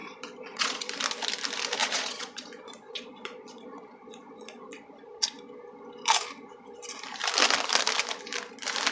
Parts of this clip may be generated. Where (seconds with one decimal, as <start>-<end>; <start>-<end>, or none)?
0.0-0.9; 1.8-4.8